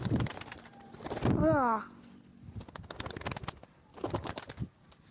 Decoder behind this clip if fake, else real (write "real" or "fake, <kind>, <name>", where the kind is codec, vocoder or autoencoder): real